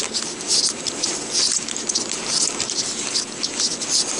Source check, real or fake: real